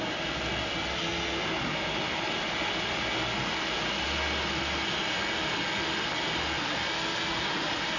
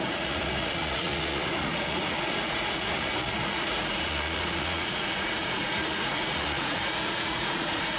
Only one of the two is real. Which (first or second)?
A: first